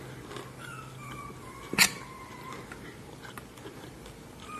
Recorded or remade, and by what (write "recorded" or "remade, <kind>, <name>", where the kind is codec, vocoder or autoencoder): recorded